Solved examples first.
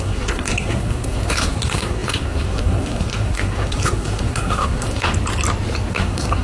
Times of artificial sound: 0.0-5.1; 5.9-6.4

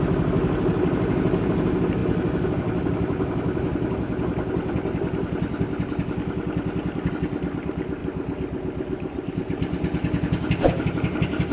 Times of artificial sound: none

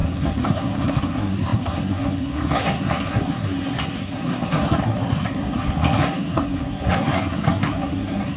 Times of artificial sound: 0.0-8.4

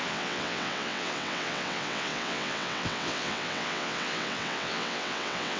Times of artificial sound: 0.0-5.6

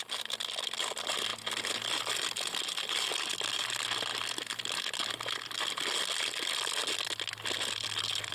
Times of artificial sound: none

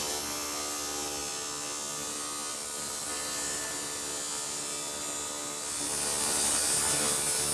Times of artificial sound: none

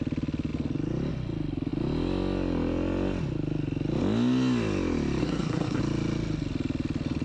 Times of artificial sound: 5.2-5.8